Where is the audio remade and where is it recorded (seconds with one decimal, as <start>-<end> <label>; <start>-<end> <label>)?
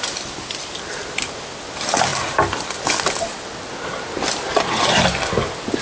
0.0-5.8 recorded